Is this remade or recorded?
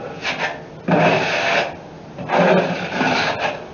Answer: recorded